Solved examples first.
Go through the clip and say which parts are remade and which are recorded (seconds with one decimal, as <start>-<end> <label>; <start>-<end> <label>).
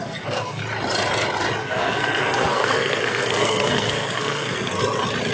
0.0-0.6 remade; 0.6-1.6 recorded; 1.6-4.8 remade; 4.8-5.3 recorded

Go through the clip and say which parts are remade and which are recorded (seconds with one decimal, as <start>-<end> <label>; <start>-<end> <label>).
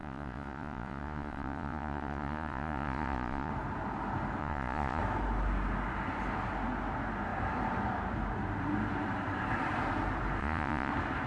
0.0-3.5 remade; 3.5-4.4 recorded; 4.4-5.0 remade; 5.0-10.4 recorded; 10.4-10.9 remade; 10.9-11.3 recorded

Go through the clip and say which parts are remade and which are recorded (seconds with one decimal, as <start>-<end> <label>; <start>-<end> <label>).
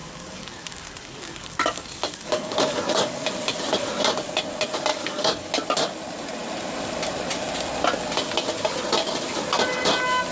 0.0-3.3 remade; 3.3-4.9 recorded; 4.9-5.5 remade; 5.5-10.3 recorded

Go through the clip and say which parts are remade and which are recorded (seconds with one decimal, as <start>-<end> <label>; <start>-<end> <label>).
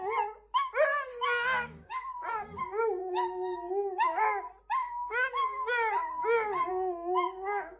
0.0-0.9 recorded; 0.9-2.6 remade; 2.6-3.0 recorded; 3.0-4.2 remade; 4.2-4.8 recorded; 4.8-5.3 remade; 5.3-6.7 recorded; 6.7-7.8 remade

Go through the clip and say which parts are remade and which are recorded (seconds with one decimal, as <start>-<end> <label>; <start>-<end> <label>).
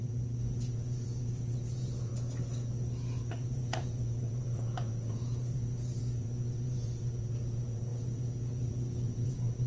0.0-2.1 remade; 2.1-3.3 recorded; 3.3-9.7 remade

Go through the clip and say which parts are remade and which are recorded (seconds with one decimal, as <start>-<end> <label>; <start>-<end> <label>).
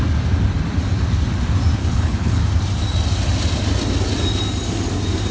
0.0-1.8 recorded; 1.8-2.4 remade; 2.4-5.3 recorded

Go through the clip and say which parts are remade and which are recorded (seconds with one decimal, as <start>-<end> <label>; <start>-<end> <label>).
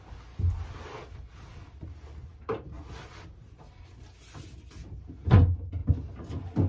0.0-6.7 recorded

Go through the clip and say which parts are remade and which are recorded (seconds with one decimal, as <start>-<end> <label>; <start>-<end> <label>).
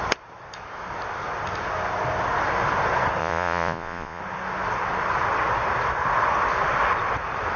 0.0-3.2 recorded; 3.2-4.2 remade; 4.2-7.6 recorded